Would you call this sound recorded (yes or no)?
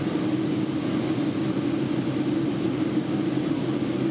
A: yes